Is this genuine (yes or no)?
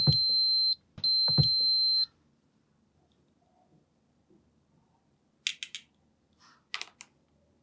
yes